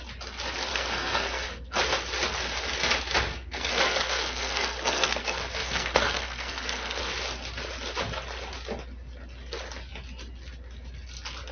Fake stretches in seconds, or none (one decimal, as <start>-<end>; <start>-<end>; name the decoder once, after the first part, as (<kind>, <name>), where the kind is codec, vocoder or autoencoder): 0.7-1.8 (codec, SNAC); 3.3-7.0

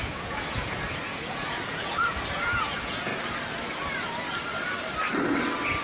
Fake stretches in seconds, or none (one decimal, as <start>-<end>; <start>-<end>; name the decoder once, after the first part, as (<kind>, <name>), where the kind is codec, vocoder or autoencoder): 0.0-3.1 (vocoder, Vocos)

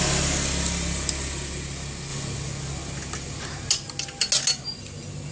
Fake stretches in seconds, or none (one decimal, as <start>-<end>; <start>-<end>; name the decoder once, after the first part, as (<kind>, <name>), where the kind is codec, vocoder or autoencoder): none

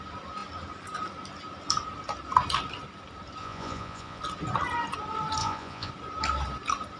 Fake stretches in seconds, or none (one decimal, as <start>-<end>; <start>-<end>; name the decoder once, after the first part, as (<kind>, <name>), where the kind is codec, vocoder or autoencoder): 3.4-4.2 (vocoder, Vocos); 5.4-5.9

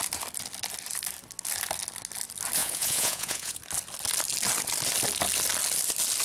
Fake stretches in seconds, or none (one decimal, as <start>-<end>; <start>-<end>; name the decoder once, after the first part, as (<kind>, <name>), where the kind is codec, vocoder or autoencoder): 2.6-3.6 (vocoder, Vocos)